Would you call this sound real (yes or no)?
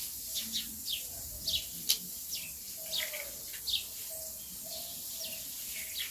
yes